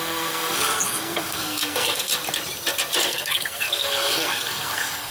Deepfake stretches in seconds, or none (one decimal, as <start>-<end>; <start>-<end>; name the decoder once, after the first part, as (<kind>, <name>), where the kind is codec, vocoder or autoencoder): 0.0-2.1 (codec, SNAC); 3.0-5.1